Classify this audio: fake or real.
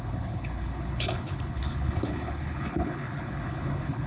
fake